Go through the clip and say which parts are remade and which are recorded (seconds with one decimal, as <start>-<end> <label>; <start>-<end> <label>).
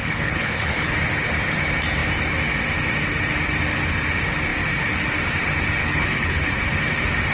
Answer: 0.0-0.9 remade; 0.9-5.8 recorded; 5.8-6.5 remade; 6.5-7.3 recorded